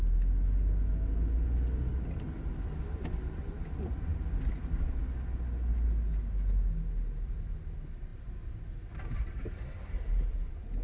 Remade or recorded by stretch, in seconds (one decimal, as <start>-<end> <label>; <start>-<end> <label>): 0.0-10.8 recorded